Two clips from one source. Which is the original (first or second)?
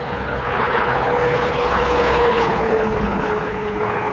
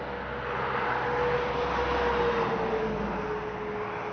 second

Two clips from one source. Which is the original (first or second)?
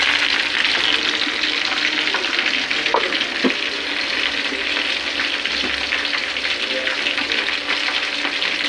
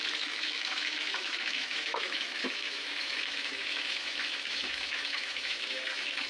first